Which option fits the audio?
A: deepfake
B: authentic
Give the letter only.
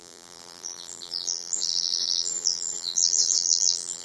A